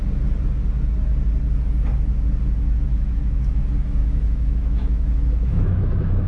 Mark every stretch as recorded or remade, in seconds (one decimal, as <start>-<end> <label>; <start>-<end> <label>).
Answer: 0.0-2.9 recorded; 2.9-3.6 remade; 3.6-4.0 recorded; 4.0-6.3 remade